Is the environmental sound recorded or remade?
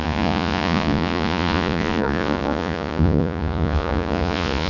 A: remade